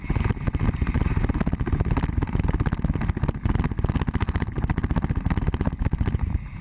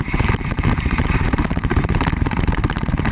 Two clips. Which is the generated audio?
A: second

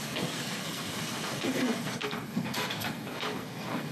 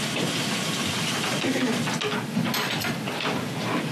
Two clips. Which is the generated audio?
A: first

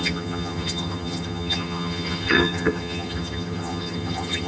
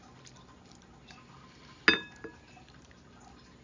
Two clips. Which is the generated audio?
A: first